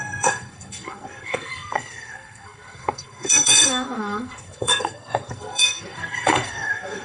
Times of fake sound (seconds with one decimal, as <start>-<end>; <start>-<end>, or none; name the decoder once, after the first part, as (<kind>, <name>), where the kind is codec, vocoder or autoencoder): 0.0-7.0 (codec, SNAC)